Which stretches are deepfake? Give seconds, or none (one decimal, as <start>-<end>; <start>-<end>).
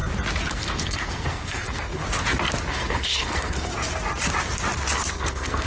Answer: 0.5-2.0; 2.7-3.7; 5.1-5.7